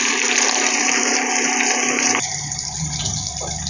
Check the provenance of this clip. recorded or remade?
remade